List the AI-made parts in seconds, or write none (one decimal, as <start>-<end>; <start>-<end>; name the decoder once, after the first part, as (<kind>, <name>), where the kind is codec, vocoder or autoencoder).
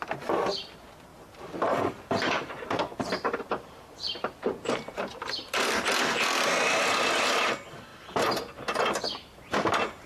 1.1-5.7 (vocoder, BigVGAN v2)